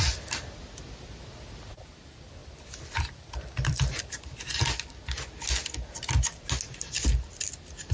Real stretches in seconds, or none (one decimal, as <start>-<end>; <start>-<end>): 0.0-2.4; 4.0-7.9